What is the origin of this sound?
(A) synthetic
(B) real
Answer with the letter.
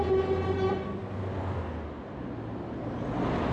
B